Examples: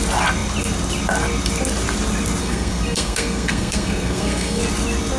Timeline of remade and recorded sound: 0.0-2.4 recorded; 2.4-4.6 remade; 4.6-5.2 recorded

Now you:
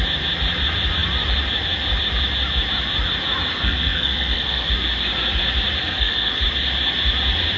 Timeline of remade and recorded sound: 0.0-3.5 recorded; 3.5-4.7 remade; 4.7-5.8 recorded; 5.8-6.4 remade; 6.4-7.6 recorded

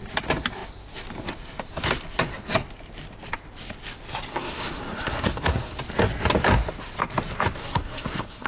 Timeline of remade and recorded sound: 0.0-4.3 recorded; 4.3-5.8 remade; 5.8-7.6 recorded; 7.6-8.5 remade

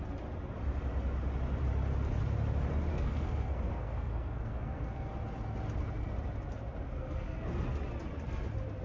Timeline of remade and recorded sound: 0.0-2.9 recorded; 2.9-5.1 remade; 5.1-6.8 recorded; 6.8-7.5 remade; 7.5-8.8 recorded

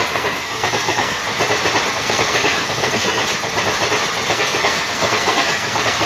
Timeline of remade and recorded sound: 0.0-1.2 remade; 1.2-1.9 recorded; 1.9-3.2 remade; 3.2-4.3 recorded; 4.3-6.1 remade

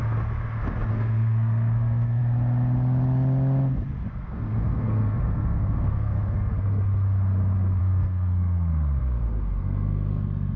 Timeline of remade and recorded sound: 0.0-0.9 recorded; 0.9-2.2 remade; 2.2-4.1 recorded; 4.1-6.5 remade; 6.5-7.8 recorded; 7.8-10.6 remade